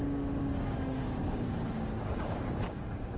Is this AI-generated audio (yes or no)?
yes